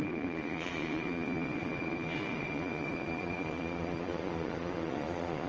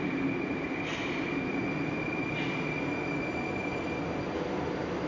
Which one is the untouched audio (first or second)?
second